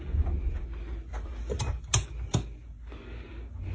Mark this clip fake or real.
real